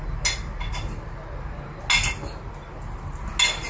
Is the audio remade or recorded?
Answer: recorded